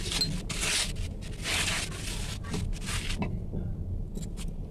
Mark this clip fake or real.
real